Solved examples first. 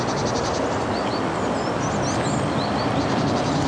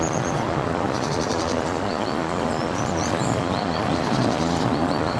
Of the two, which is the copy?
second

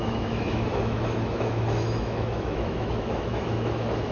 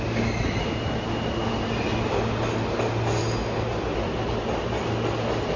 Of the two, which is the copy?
first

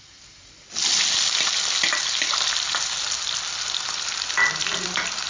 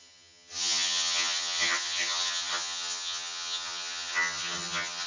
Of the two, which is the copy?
second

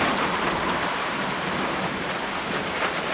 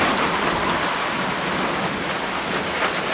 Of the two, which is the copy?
first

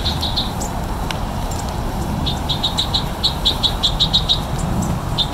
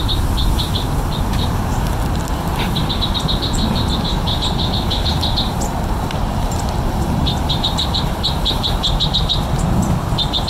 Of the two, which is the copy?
second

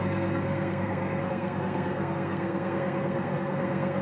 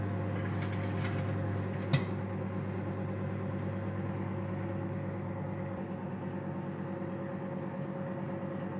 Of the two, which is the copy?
first